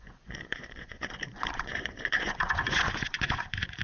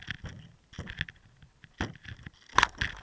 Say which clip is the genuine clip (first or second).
second